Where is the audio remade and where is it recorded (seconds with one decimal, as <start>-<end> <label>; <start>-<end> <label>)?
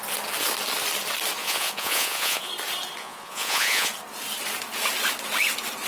0.0-1.4 recorded; 1.4-2.5 remade; 2.5-3.0 recorded; 3.0-3.9 remade; 3.9-5.9 recorded